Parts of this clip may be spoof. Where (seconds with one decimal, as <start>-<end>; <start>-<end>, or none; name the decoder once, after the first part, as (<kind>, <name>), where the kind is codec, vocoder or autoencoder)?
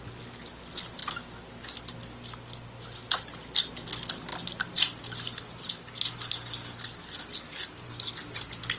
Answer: 4.3-5.7 (vocoder, BigVGAN v2)